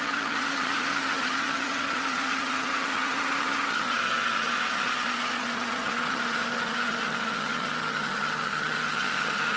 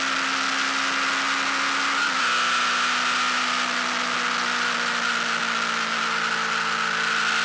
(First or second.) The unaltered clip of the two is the second